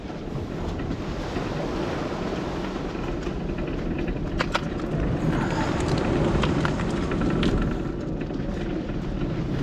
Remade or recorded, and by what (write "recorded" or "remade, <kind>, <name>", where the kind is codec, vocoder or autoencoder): recorded